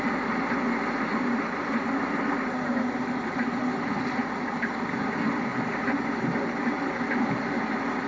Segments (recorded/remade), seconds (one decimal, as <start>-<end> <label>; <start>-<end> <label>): 0.0-8.1 recorded

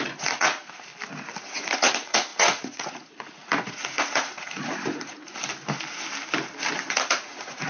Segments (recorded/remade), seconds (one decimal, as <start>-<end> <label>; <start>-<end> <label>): 0.0-0.9 remade; 0.9-1.4 recorded; 1.4-5.4 remade; 5.4-6.9 recorded; 6.9-7.7 remade

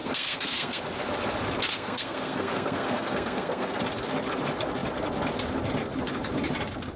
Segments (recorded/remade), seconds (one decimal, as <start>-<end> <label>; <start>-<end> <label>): 0.0-0.8 remade; 0.8-1.7 recorded; 1.7-3.8 remade; 3.8-7.0 recorded